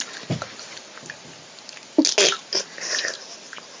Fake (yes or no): no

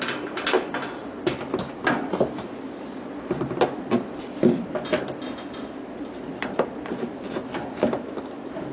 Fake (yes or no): no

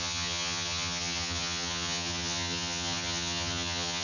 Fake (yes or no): yes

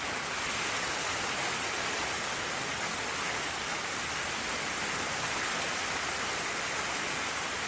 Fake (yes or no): no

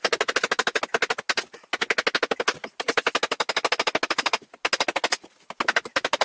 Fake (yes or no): no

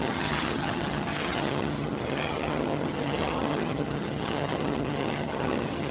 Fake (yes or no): yes